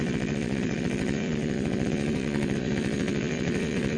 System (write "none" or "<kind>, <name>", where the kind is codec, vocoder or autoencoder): vocoder, Vocos